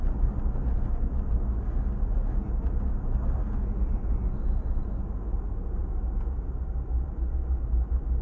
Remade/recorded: recorded